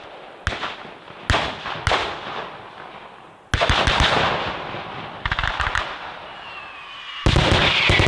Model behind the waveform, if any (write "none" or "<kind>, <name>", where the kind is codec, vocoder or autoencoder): none